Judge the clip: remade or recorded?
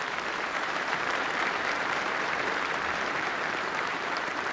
remade